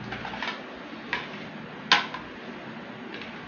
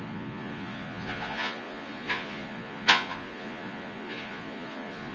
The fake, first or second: second